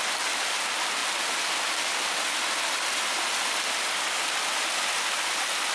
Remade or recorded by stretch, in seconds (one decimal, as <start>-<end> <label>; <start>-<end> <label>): 0.0-5.7 recorded